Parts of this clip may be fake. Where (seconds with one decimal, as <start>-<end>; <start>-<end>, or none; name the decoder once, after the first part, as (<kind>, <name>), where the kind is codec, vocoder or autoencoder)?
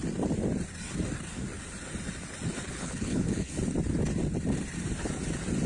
2.7-3.5 (codec, HILCodec)